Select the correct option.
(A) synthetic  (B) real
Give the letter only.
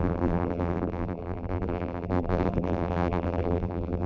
A